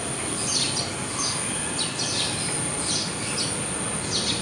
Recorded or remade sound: recorded